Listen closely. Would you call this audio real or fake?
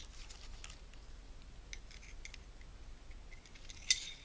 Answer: real